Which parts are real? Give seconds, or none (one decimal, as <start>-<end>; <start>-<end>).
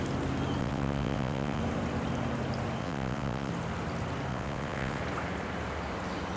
0.0-0.6; 1.6-2.8; 3.5-4.3; 5.0-6.4